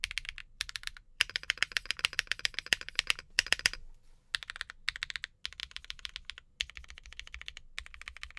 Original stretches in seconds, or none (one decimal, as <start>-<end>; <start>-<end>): 0.0-0.4; 4.1-5.6; 6.1-8.4